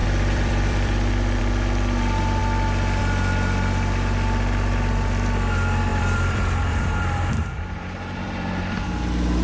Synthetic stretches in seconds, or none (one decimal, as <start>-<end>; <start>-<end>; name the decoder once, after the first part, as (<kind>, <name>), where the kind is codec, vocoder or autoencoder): 0.0-1.4 (vocoder, BigVGAN v2); 5.9-8.6